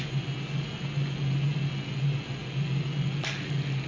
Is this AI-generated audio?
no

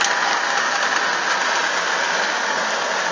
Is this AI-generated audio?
no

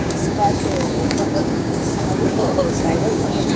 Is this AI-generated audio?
yes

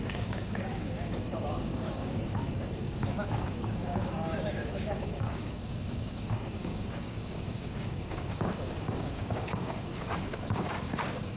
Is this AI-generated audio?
yes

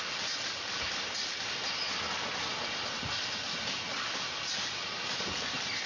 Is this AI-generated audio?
no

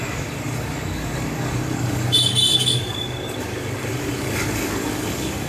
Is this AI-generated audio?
yes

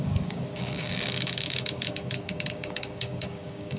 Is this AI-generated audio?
yes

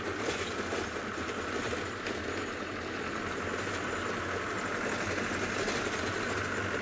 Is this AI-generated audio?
no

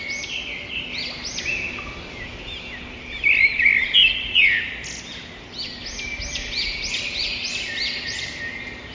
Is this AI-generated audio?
no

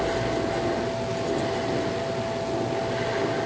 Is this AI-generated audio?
no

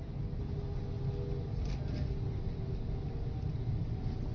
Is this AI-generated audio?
no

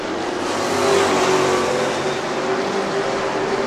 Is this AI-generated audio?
no